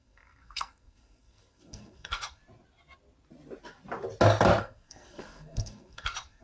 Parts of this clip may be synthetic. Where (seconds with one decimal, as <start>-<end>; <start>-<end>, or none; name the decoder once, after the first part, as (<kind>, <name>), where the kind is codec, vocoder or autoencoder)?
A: 0.0-2.4 (codec, SNAC); 4.6-6.4